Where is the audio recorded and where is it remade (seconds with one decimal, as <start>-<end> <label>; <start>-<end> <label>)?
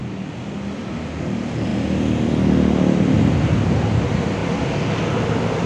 0.0-1.1 recorded; 1.1-1.7 remade; 1.7-3.3 recorded; 3.3-4.4 remade; 4.4-4.9 recorded; 4.9-5.7 remade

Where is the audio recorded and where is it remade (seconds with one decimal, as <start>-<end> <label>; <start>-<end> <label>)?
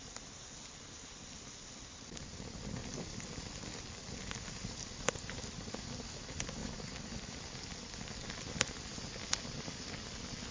0.0-6.6 recorded; 6.6-7.3 remade; 7.3-10.5 recorded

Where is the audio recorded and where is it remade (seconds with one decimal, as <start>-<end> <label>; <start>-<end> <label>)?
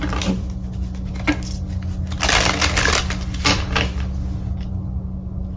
0.0-5.6 recorded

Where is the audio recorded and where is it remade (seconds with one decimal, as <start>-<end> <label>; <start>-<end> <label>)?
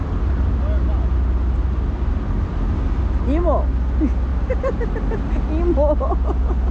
0.0-4.3 recorded; 4.3-4.9 remade; 4.9-6.7 recorded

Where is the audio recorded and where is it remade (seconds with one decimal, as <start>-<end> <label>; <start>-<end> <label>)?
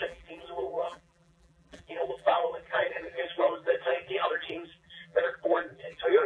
0.0-6.3 remade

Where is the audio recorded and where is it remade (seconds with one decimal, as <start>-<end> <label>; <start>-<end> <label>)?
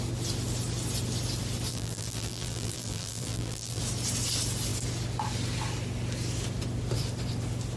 0.0-1.7 recorded; 1.7-3.8 remade; 3.8-7.8 recorded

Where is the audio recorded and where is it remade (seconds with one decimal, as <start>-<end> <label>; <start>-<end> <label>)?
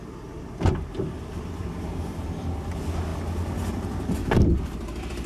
0.0-5.3 recorded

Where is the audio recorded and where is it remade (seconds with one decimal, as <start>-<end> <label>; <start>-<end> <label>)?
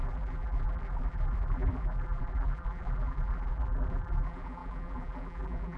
0.0-5.8 remade